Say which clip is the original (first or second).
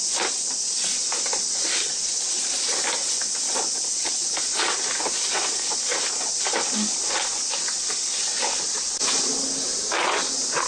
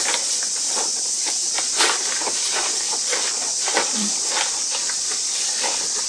first